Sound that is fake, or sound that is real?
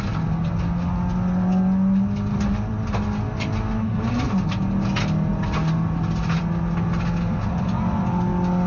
real